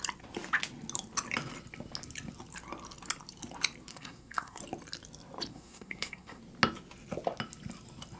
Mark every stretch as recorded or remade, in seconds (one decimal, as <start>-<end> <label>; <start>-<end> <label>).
0.0-3.9 recorded; 3.9-4.6 remade; 4.6-5.5 recorded; 5.5-6.4 remade; 6.4-8.2 recorded